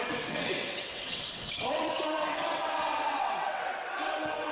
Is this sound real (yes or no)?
no